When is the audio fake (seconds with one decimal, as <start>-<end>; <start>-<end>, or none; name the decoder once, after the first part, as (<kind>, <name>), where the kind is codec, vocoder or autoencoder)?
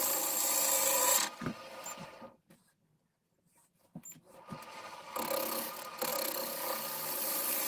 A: none